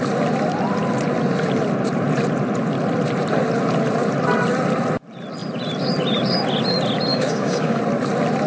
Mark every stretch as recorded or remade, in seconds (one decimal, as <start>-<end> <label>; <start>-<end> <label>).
0.0-7.1 recorded; 7.1-7.8 remade; 7.8-8.5 recorded